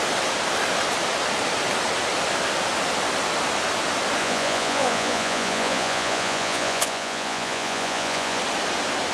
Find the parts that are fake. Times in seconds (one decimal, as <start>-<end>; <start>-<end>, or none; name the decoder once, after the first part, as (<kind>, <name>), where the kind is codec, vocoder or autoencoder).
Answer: 4.2-8.4 (vocoder, Vocos)